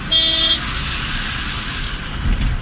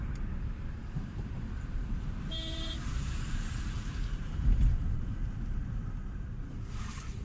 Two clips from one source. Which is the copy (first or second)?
second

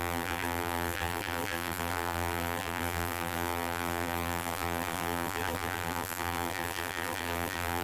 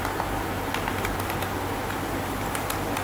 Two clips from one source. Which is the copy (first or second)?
first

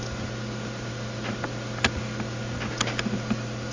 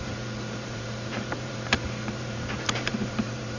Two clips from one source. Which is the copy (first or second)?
second